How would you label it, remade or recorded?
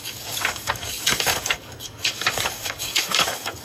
remade